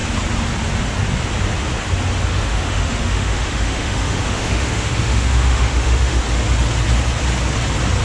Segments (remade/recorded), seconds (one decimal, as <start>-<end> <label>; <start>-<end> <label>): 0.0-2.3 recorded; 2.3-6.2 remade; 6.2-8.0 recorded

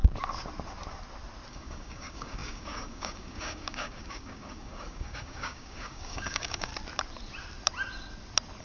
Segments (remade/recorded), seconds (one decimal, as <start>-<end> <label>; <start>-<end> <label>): 0.0-1.5 recorded; 1.5-6.7 remade; 6.7-8.6 recorded

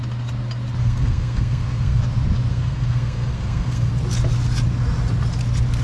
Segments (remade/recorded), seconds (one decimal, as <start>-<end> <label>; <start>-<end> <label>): 0.0-0.8 recorded; 0.8-2.0 remade; 2.0-2.5 recorded; 2.5-3.9 remade; 3.9-5.8 recorded

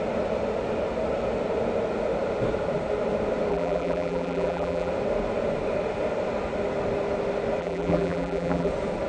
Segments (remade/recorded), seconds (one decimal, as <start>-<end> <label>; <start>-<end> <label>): 0.0-3.5 recorded; 3.5-4.9 remade; 4.9-7.6 recorded; 7.6-8.7 remade; 8.7-9.1 recorded